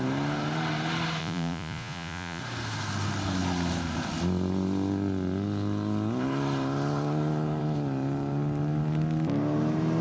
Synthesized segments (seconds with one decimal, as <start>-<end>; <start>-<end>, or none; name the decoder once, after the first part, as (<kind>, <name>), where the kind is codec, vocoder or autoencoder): 1.2-2.4 (vocoder, Vocos)

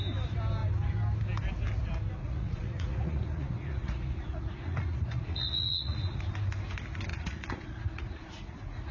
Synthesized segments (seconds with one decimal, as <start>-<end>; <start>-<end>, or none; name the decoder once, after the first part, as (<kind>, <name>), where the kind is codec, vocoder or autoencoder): 2.2-6.2 (vocoder, Vocos); 7.1-8.9

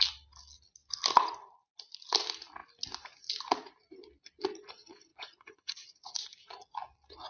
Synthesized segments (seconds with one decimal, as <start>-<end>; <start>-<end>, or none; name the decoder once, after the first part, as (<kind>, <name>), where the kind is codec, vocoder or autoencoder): 5.1-6.1 (vocoder, Vocos)